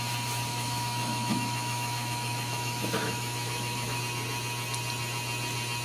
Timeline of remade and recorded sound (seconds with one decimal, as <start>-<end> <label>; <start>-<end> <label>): 0.0-0.5 recorded; 0.5-4.0 remade; 4.0-5.8 recorded